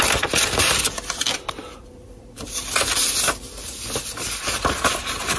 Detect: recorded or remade recorded